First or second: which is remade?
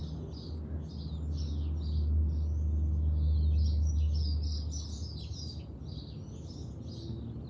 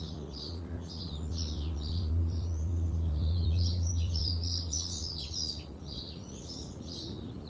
second